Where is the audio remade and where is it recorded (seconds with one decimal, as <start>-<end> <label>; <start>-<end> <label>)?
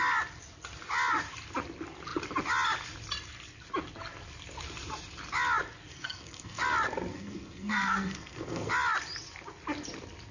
0.0-5.9 recorded; 5.9-6.6 remade; 6.6-7.1 recorded; 7.1-8.7 remade; 8.7-10.3 recorded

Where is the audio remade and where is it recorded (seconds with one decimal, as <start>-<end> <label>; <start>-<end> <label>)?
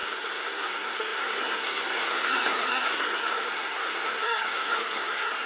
0.0-5.5 remade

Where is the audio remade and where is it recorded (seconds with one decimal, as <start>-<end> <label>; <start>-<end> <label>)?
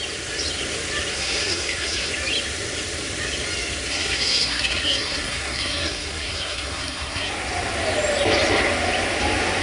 0.0-1.1 recorded; 1.1-2.1 remade; 2.1-3.9 recorded; 3.9-7.3 remade; 7.3-9.6 recorded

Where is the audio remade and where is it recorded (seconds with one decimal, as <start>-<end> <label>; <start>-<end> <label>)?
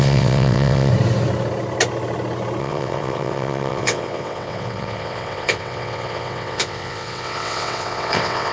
0.0-0.9 remade; 0.9-2.6 recorded; 2.6-8.5 remade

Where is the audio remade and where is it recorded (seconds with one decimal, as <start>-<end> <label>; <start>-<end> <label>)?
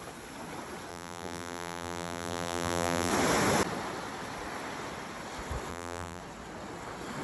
0.0-0.9 recorded; 0.9-3.1 remade; 3.1-5.7 recorded; 5.7-6.2 remade; 6.2-7.2 recorded